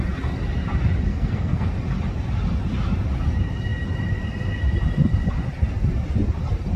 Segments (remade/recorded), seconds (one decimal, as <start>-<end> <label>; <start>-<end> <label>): 0.0-1.1 recorded; 1.1-1.7 remade; 1.7-6.8 recorded